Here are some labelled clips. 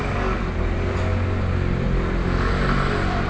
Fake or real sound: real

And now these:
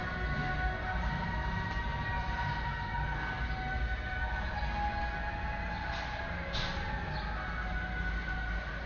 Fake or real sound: real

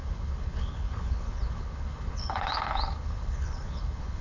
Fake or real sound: fake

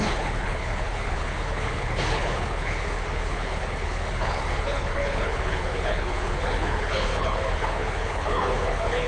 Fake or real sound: fake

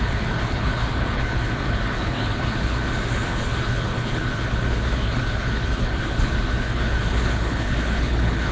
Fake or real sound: fake